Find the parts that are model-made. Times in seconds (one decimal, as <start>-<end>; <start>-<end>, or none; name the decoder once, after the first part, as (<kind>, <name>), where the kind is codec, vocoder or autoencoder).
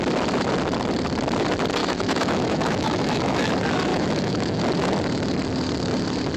1.8-3.5 (autoencoder, DAC-VAE); 3.9-4.6